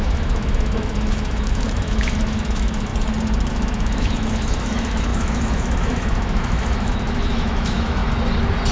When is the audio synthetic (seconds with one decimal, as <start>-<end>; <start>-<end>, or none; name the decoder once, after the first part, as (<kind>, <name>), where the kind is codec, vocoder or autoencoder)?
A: 0.0-2.9 (autoencoder, DAC-VAE); 3.5-8.0